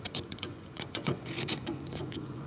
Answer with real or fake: fake